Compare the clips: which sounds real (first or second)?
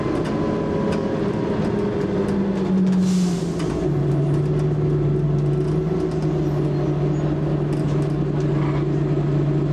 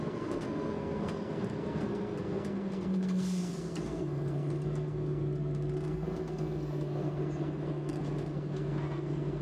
first